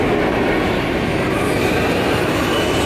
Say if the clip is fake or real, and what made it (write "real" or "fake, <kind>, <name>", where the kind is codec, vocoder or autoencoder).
real